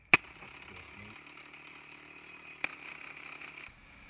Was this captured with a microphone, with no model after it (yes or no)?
yes